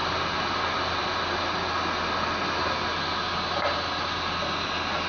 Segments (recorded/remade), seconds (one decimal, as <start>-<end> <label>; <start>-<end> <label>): 0.0-5.1 recorded